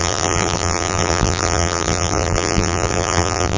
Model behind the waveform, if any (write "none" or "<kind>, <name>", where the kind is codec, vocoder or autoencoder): vocoder, BigVGAN v2